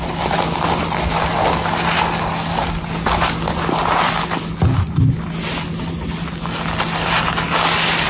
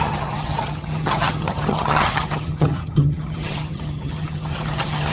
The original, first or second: first